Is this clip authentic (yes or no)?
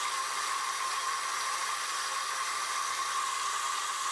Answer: yes